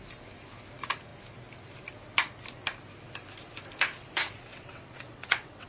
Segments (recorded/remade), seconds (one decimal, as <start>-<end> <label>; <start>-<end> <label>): 0.0-4.5 recorded; 4.5-5.7 remade